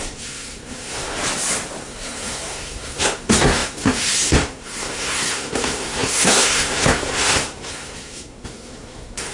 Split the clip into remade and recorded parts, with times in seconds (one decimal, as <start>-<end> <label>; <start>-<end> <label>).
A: 0.0-1.2 remade; 1.2-1.8 recorded; 1.8-9.3 remade